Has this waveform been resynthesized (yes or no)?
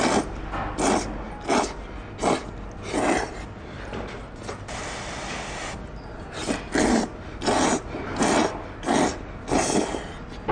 no